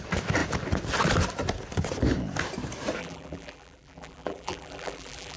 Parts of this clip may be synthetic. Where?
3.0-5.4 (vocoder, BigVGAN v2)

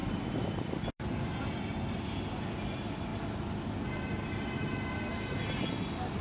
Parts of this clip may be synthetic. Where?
0.0-2.2 (vocoder, BigVGAN v2)

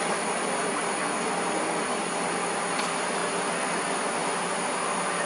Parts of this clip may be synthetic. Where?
none

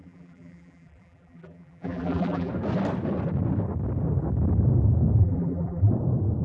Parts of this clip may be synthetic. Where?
0.0-2.5 (vocoder, BigVGAN v2); 5.2-5.9

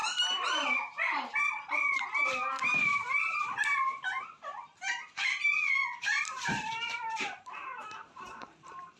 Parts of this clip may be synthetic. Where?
0.0-4.5 (vocoder, BigVGAN v2); 6.0-9.0

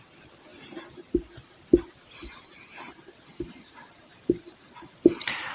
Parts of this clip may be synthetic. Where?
0.0-0.5 (vocoder, BigVGAN v2); 1.8-2.5; 4.0-5.5